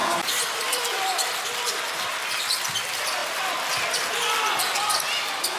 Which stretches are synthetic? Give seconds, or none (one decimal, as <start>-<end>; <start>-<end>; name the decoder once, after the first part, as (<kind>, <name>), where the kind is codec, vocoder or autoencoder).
0.0-3.2 (vocoder, BigVGAN v2); 3.9-5.6